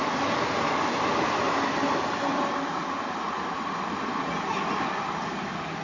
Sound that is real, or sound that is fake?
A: real